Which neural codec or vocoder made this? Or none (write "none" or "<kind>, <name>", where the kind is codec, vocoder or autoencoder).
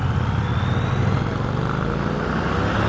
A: none